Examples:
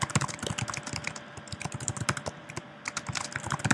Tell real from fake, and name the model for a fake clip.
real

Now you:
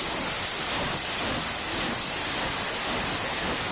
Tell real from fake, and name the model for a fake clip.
real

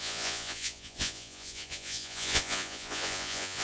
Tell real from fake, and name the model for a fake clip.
fake, vocoder, Vocos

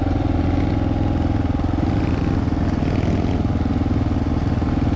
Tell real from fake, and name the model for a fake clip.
real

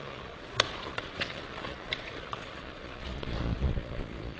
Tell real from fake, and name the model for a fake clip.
fake, vocoder, Vocos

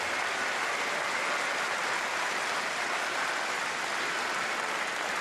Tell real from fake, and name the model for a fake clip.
real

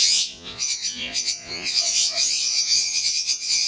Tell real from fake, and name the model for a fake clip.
fake, vocoder, Vocos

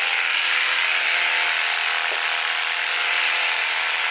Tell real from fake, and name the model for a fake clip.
real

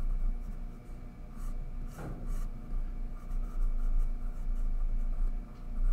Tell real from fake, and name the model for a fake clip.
real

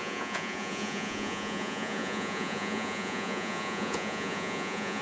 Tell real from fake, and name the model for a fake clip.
fake, vocoder, Vocos